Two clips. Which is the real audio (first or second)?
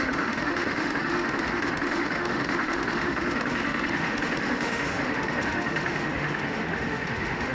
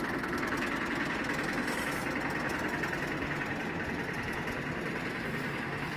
second